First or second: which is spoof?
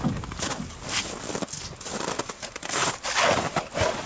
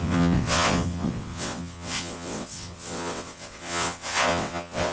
second